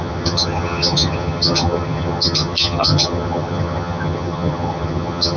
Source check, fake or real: fake